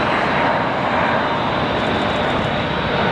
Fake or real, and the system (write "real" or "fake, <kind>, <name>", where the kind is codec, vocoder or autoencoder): real